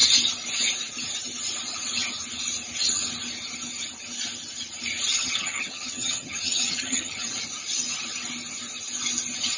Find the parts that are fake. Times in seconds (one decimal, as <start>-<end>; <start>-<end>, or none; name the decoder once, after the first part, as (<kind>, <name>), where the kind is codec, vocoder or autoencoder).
5.1-7.4 (vocoder, HiFi-GAN)